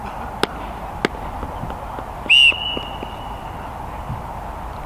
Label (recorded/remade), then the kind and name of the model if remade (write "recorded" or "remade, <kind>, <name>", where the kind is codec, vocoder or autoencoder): recorded